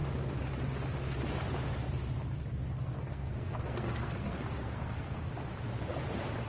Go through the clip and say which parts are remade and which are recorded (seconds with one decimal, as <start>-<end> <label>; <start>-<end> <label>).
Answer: 0.0-2.5 recorded; 2.5-5.3 remade; 5.3-6.5 recorded